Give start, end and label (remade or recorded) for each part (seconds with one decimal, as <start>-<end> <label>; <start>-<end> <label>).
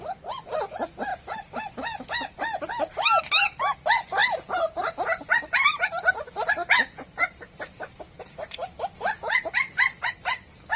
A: 0.0-4.2 recorded; 4.2-6.5 remade; 6.5-10.8 recorded